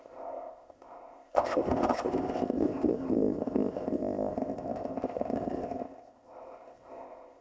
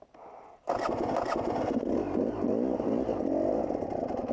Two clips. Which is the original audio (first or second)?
second